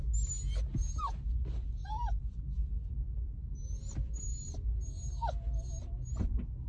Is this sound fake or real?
real